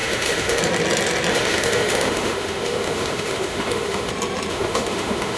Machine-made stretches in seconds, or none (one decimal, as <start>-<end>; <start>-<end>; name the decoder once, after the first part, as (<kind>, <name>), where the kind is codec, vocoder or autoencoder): 0.0-0.6 (autoencoder, DAC-VAE); 1.3-4.1; 4.5-5.4